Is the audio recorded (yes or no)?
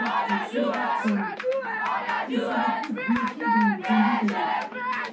yes